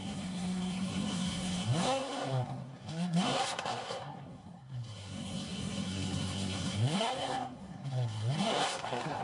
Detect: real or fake fake